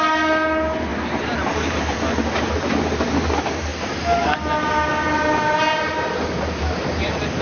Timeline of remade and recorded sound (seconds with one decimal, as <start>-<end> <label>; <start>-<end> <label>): 0.0-7.4 recorded